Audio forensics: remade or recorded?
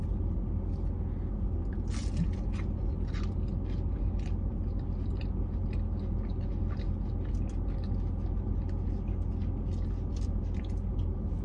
recorded